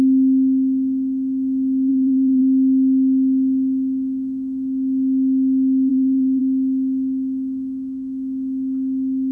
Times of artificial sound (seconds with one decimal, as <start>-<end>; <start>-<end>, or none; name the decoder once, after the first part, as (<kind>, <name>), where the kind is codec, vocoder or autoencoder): 1.9-2.4 (vocoder, BigVGAN v2); 5.9-6.4